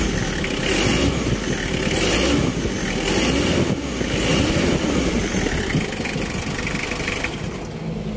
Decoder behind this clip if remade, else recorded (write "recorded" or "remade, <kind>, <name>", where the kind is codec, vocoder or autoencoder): recorded